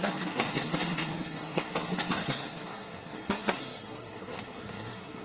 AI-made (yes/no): yes